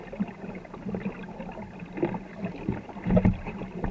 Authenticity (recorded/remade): recorded